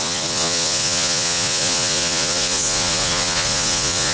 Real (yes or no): no